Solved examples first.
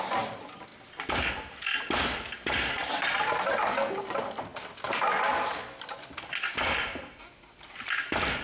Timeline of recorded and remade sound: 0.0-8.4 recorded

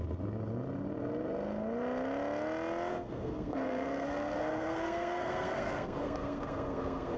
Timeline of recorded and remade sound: 0.0-2.9 recorded; 2.9-7.2 remade

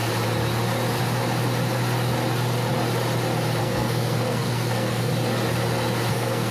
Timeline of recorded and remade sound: 0.0-3.6 recorded; 3.6-5.1 remade; 5.1-6.1 recorded; 6.1-6.5 remade

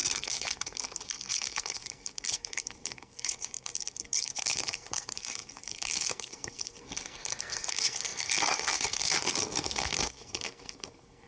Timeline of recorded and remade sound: 0.0-11.3 remade

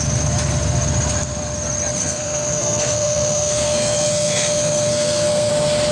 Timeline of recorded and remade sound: 0.0-2.0 recorded; 2.0-5.5 remade; 5.5-5.9 recorded

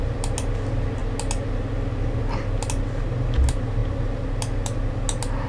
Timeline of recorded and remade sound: 0.0-5.5 recorded